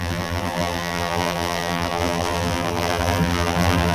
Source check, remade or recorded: remade